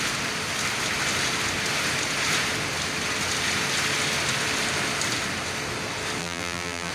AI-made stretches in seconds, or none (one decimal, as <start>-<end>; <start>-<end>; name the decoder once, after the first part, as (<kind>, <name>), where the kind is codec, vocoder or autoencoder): 6.2-6.9 (vocoder, BigVGAN v2)